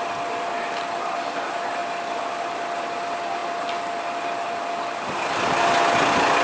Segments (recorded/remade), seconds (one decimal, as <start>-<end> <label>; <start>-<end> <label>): 0.0-6.4 recorded